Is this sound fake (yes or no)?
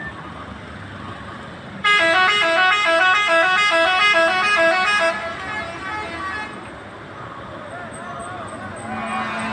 no